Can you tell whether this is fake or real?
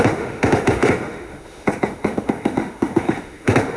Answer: fake